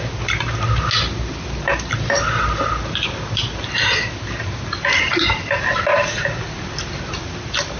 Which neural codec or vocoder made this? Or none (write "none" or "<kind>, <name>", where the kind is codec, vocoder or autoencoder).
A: none